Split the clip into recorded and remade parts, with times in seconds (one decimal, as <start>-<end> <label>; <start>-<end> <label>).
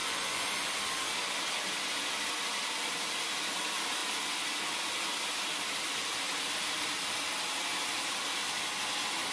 0.0-0.7 remade; 0.7-9.3 recorded